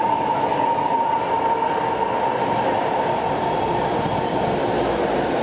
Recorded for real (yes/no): yes